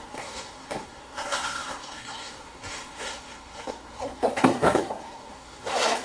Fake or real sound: fake